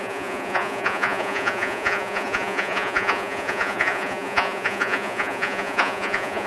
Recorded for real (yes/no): no